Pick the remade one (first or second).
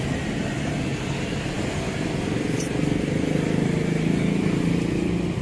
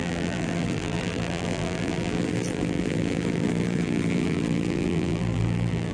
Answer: second